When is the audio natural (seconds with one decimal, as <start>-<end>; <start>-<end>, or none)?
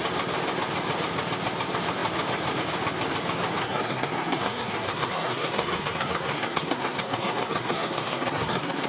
0.0-3.6